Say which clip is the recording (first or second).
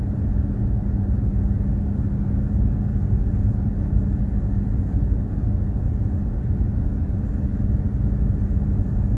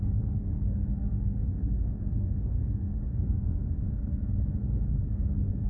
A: first